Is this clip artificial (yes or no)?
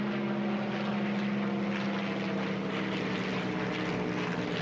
no